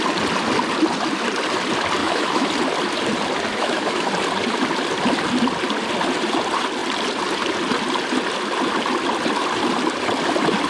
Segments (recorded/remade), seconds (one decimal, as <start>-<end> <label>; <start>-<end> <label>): 0.0-2.0 recorded; 2.0-2.5 remade; 2.5-3.5 recorded; 3.5-4.1 remade; 4.1-10.7 recorded